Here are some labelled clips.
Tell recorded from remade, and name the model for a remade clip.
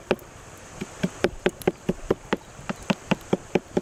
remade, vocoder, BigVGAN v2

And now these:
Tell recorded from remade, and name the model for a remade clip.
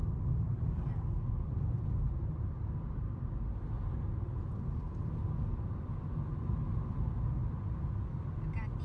recorded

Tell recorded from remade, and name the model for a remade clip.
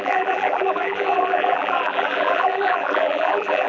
remade, vocoder, BigVGAN v2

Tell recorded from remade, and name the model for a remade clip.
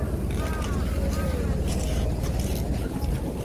recorded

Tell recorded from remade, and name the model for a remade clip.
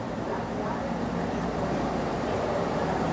remade, vocoder, BigVGAN v2